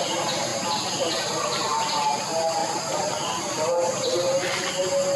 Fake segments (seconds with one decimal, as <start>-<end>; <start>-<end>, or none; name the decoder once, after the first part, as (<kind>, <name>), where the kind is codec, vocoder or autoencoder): none